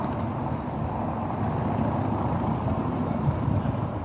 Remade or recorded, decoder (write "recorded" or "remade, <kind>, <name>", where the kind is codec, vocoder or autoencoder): recorded